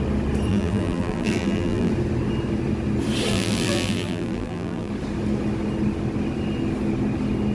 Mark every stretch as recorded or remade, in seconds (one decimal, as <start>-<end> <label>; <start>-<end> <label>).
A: 0.0-0.5 recorded; 0.5-1.9 remade; 1.9-3.3 recorded; 3.3-4.9 remade; 4.9-7.5 recorded